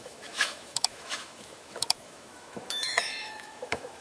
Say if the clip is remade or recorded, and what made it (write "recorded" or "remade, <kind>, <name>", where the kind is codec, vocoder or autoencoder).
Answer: remade, autoencoder, DAC-VAE